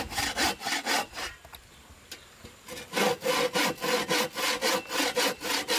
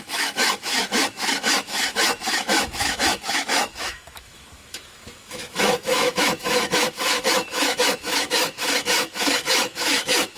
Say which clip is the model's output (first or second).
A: second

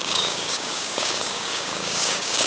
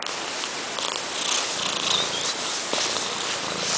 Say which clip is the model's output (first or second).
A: first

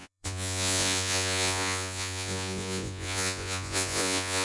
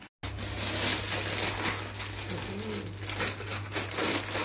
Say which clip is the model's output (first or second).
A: first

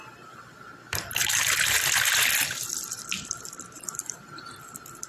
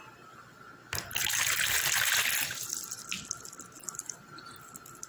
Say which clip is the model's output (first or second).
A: first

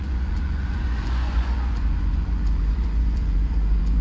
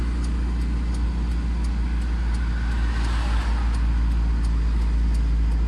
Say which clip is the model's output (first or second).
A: first